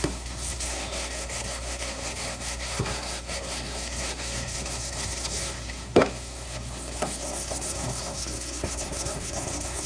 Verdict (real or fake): fake